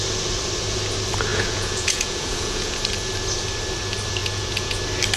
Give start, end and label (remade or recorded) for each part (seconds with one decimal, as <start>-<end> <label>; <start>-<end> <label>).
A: 0.0-1.3 recorded; 1.3-2.7 remade; 2.7-4.2 recorded; 4.2-4.8 remade; 4.8-5.2 recorded